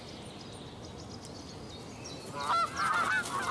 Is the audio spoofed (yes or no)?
no